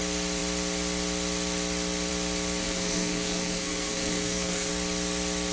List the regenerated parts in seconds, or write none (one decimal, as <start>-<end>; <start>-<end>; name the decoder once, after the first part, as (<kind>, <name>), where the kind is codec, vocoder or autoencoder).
2.6-4.7 (codec, SNAC)